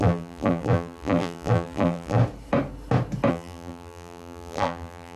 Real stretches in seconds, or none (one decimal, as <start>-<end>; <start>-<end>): 2.2-3.3